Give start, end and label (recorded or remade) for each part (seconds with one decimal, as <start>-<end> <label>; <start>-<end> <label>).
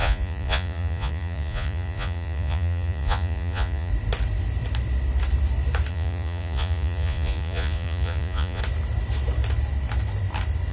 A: 0.0-3.9 remade; 3.9-5.9 recorded; 5.9-8.6 remade; 8.6-10.7 recorded